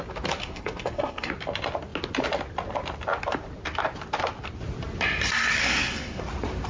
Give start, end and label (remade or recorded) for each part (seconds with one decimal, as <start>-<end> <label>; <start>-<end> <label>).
0.0-0.4 recorded; 0.4-1.3 remade; 1.3-5.6 recorded; 5.6-6.2 remade; 6.2-6.7 recorded